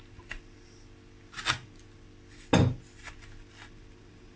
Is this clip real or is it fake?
real